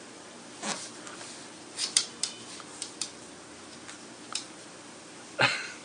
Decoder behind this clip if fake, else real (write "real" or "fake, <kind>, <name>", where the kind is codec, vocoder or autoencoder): fake, vocoder, BigVGAN v2